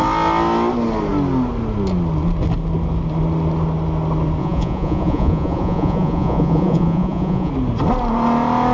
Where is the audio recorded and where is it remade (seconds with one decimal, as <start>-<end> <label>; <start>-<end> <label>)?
0.0-4.4 recorded; 4.4-7.5 remade; 7.5-8.7 recorded